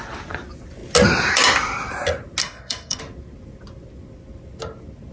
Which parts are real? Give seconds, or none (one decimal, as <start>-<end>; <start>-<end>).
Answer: 0.0-2.4; 3.0-5.1